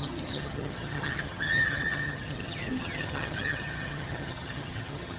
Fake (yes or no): yes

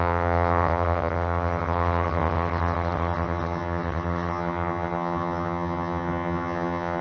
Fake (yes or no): yes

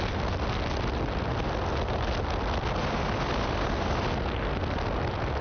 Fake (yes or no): no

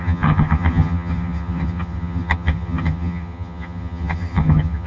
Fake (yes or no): yes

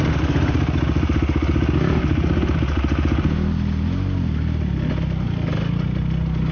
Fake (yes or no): no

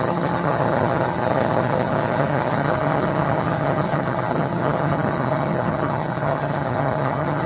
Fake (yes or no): yes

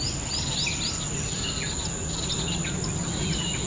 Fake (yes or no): no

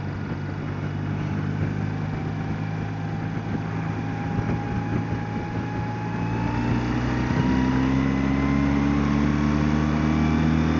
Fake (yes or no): no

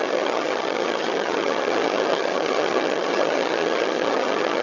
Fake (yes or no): yes